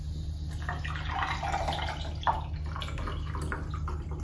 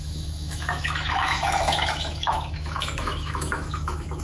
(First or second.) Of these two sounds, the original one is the first